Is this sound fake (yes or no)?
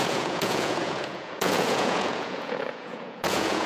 yes